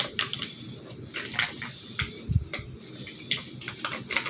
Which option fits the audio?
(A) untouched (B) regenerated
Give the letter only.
A